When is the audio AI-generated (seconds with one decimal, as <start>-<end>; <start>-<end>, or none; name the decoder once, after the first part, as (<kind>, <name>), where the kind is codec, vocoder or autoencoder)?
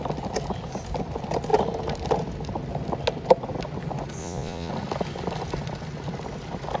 4.2-4.7 (vocoder, Vocos)